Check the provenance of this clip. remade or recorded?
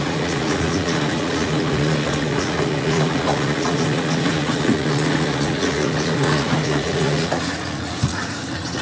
remade